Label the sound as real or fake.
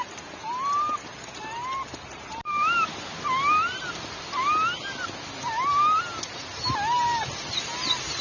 real